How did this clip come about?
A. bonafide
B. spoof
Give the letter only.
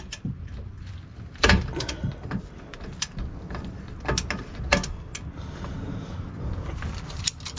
A